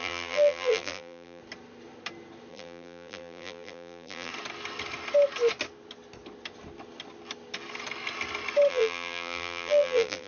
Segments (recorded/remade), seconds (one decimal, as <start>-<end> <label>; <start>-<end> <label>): 0.0-1.4 remade; 1.4-2.5 recorded; 2.5-4.3 remade; 4.3-8.7 recorded; 8.7-10.3 remade